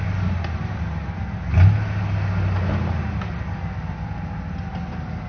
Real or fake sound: real